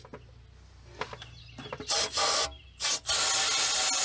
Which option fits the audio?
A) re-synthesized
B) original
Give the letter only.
B